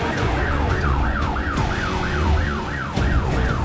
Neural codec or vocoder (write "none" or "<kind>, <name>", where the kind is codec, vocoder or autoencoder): vocoder, Vocos